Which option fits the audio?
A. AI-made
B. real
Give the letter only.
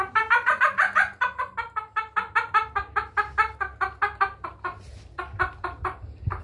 B